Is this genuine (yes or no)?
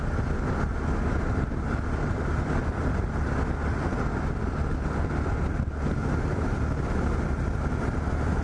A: yes